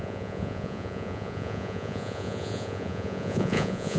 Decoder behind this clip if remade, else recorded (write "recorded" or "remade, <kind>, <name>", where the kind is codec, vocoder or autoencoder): remade, vocoder, Vocos